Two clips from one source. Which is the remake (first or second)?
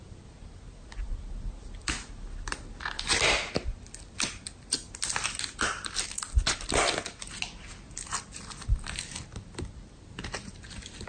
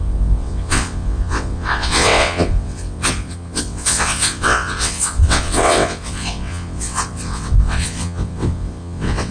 second